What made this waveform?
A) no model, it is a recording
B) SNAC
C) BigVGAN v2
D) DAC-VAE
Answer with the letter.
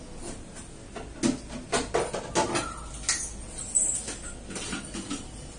A